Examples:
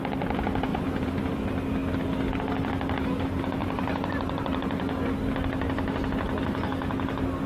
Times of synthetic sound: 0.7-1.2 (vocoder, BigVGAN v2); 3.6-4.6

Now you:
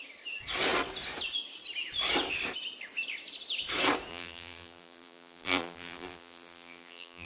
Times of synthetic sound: 4.1-7.3 (vocoder, BigVGAN v2)

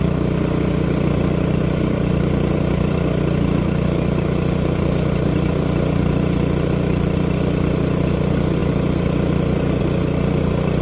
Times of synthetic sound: 0.0-10.8 (vocoder, BigVGAN v2)